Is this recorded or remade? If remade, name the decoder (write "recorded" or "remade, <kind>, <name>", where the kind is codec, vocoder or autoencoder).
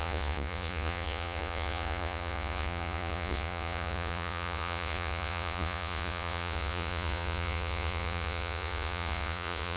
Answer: remade, vocoder, Vocos